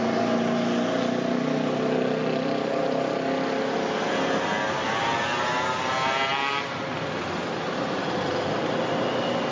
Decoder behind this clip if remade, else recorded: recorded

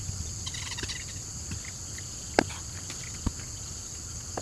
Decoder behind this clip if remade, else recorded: recorded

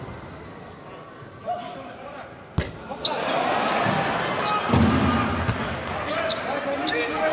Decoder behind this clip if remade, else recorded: recorded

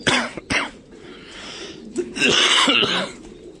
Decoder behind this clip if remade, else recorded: remade, vocoder, BigVGAN v2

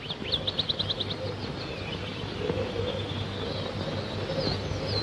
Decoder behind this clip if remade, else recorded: recorded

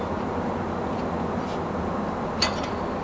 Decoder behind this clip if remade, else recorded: recorded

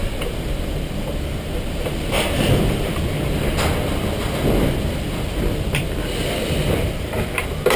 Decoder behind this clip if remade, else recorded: remade, vocoder, BigVGAN v2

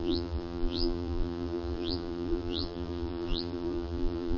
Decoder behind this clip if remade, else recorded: remade, vocoder, BigVGAN v2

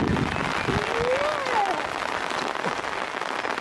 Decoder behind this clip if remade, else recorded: recorded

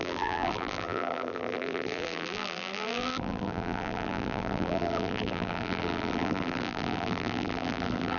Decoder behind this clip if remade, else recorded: remade, vocoder, BigVGAN v2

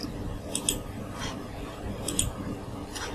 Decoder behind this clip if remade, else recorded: recorded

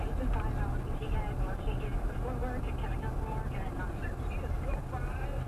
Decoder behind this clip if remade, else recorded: recorded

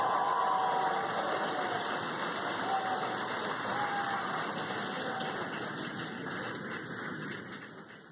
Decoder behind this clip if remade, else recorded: recorded